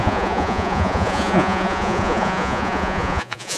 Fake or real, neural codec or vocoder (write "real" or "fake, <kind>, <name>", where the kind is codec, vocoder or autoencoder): fake, vocoder, Vocos